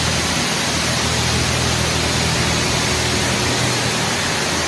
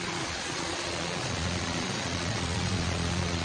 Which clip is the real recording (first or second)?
first